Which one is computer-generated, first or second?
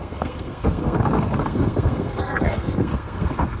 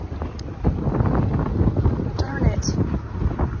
first